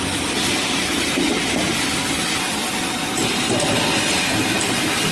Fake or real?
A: fake